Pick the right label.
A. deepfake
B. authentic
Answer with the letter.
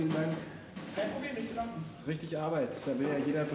B